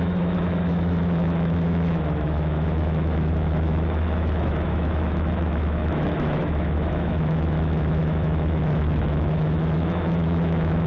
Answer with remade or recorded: remade